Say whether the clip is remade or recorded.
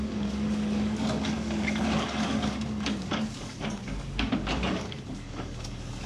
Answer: remade